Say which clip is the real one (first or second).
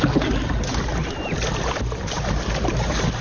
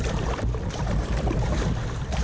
first